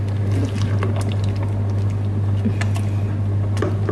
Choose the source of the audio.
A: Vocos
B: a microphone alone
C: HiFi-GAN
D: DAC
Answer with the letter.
B